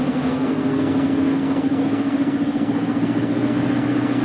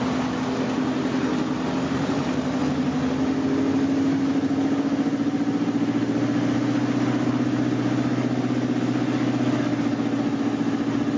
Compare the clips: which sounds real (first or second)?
second